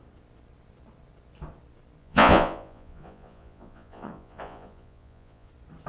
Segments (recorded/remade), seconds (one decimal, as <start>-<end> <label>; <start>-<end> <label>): 0.0-2.0 recorded; 2.0-5.5 remade; 5.5-5.9 recorded